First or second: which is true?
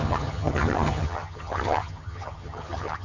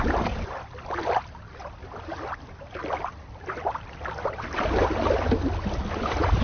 second